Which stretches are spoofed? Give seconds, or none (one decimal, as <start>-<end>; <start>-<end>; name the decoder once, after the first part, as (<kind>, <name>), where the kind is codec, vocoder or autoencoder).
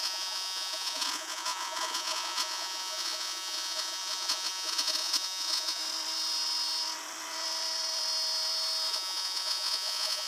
0.0-5.8 (vocoder, Vocos); 8.9-10.3